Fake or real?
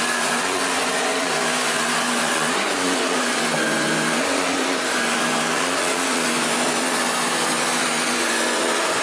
fake